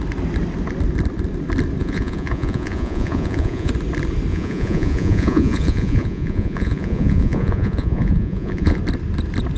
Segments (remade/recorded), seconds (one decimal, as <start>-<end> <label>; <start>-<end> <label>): 0.0-1.8 recorded; 1.8-3.7 remade; 3.7-4.3 recorded; 4.3-8.8 remade; 8.8-9.6 recorded